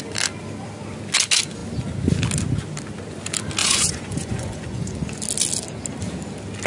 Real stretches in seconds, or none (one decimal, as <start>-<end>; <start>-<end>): 0.0-3.6; 5.2-6.7